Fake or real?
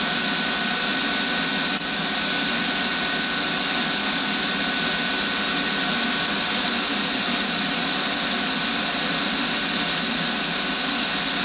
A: real